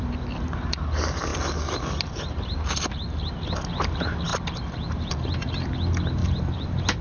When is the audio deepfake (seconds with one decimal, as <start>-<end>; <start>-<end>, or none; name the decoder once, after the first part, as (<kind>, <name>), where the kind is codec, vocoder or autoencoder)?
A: none